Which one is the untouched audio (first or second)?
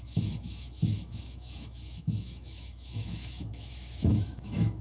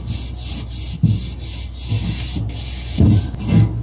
second